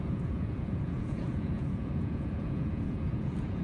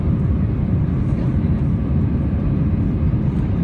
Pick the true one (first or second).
second